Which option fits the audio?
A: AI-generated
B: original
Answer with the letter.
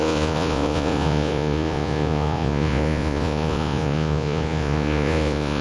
A